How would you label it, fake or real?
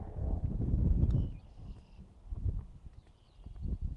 real